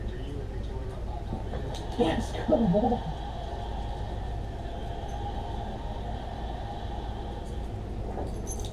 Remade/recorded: recorded